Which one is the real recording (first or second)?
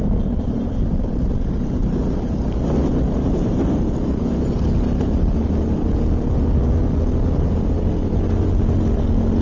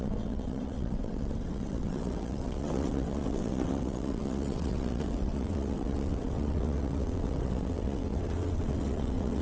first